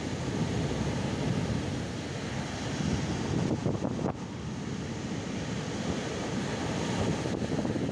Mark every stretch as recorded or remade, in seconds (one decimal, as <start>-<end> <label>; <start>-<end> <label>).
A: 0.0-7.9 recorded